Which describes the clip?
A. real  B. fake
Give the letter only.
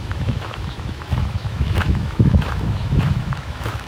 B